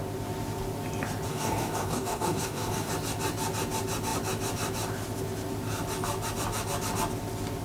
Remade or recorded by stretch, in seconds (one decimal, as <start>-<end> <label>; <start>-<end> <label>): 0.0-1.3 recorded; 1.3-2.9 remade; 2.9-7.6 recorded